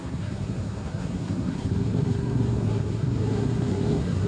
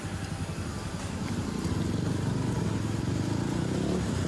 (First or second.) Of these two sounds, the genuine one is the second